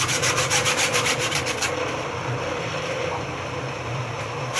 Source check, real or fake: fake